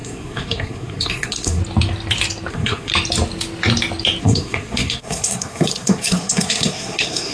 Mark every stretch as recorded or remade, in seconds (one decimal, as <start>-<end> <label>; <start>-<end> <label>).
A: 0.0-1.6 remade; 1.6-2.5 recorded; 2.5-2.9 remade; 2.9-4.2 recorded; 4.2-7.3 remade

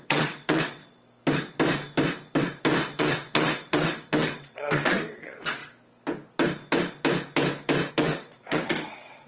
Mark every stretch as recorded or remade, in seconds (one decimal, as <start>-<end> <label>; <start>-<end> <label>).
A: 0.0-0.8 remade; 0.8-3.0 recorded; 3.0-5.6 remade; 5.6-7.9 recorded; 7.9-9.3 remade

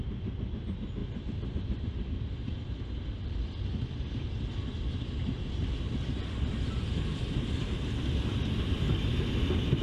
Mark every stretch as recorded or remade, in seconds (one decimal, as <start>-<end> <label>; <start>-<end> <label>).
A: 0.0-1.0 recorded; 1.0-6.1 remade; 6.1-9.8 recorded

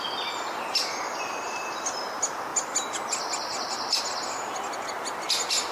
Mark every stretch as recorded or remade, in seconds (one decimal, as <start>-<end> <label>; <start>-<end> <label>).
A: 0.0-5.7 recorded

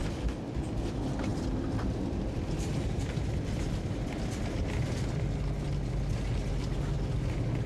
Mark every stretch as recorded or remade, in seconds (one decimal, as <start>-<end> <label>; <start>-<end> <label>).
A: 0.0-7.7 recorded

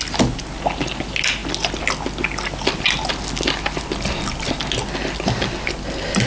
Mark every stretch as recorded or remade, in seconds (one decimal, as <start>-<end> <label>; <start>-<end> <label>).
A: 0.0-6.3 recorded

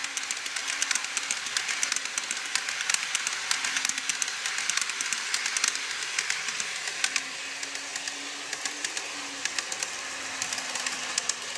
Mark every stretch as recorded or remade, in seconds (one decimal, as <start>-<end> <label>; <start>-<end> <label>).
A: 0.0-11.6 recorded